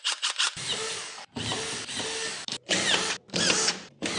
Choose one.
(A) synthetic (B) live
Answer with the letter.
B